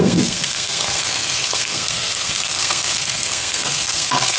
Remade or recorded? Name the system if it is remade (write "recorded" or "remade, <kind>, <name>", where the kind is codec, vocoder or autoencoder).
remade, codec, SNAC